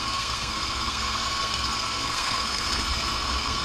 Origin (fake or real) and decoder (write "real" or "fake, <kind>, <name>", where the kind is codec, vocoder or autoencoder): fake, codec, SNAC